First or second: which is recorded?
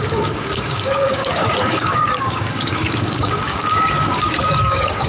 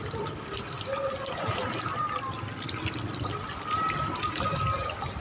second